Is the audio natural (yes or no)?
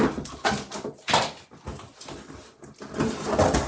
yes